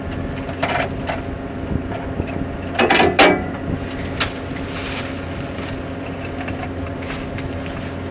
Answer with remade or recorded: recorded